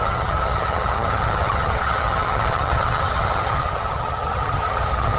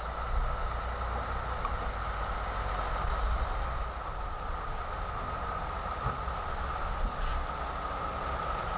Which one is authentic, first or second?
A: second